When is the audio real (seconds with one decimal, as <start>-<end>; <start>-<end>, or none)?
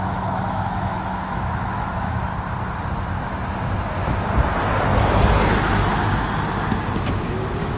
2.3-7.0